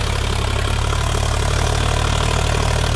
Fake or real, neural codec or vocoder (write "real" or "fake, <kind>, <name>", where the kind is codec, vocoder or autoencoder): real